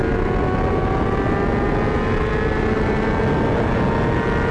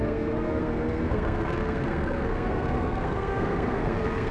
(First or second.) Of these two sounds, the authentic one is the first